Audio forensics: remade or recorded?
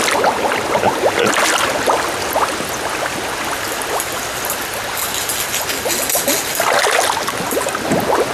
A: recorded